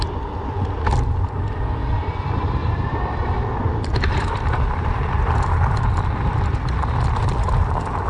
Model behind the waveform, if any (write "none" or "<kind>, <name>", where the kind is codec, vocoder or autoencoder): vocoder, BigVGAN v2